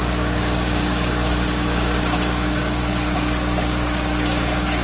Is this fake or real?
fake